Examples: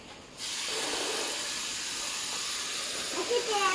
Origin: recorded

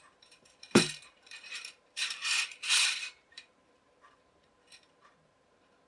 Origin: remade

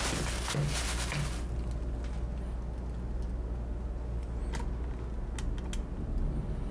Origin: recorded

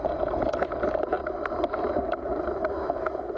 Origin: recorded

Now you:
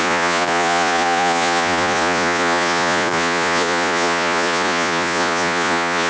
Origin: remade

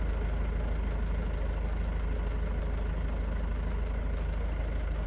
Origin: recorded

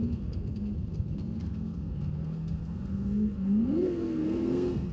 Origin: remade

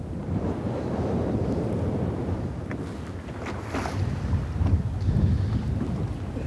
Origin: recorded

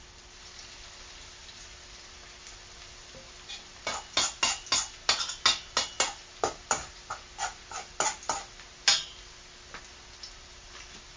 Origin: recorded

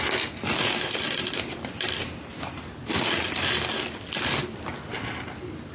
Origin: recorded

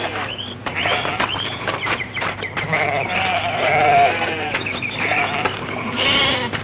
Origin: remade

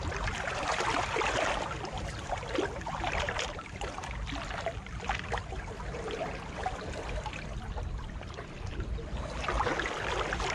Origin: recorded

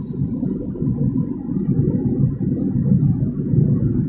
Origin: recorded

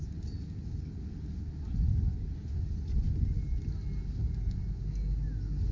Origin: recorded